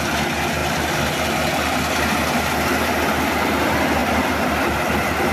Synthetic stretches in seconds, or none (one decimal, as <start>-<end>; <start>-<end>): none